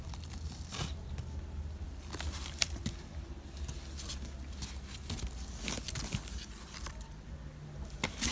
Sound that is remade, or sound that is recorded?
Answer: recorded